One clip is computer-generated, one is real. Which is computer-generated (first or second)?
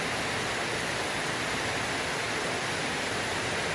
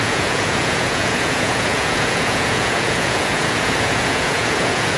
second